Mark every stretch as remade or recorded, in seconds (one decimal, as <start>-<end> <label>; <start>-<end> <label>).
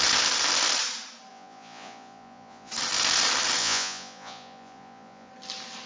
0.0-1.3 recorded; 1.3-2.7 remade; 2.7-3.6 recorded; 3.6-5.3 remade; 5.3-5.9 recorded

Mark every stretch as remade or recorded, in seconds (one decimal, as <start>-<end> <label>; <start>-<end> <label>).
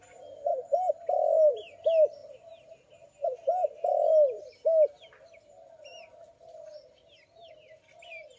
0.0-8.4 recorded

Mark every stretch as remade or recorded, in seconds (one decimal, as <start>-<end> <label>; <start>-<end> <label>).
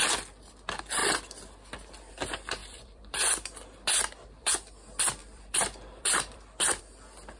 0.0-2.6 recorded; 2.6-4.5 remade; 4.5-5.2 recorded; 5.2-6.8 remade; 6.8-7.4 recorded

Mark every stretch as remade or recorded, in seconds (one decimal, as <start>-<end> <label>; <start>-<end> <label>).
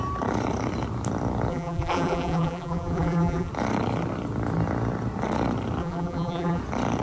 0.0-1.5 recorded; 1.5-3.5 remade; 3.5-5.8 recorded; 5.8-6.6 remade; 6.6-7.0 recorded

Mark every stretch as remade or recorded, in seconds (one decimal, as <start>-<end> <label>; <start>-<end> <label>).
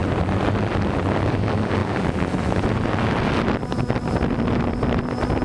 0.0-5.4 recorded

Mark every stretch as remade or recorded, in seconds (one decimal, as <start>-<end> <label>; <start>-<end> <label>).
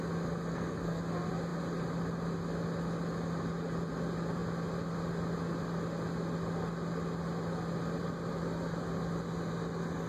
0.0-0.5 recorded; 0.5-1.0 remade; 1.0-10.1 recorded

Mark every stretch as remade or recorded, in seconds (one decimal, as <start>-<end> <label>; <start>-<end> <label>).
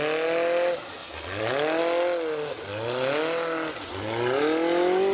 0.0-5.1 recorded